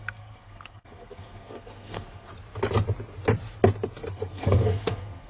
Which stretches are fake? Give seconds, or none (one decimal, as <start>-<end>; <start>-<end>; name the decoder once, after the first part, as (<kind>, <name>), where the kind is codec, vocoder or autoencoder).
0.0-2.3 (codec, SNAC); 4.1-5.3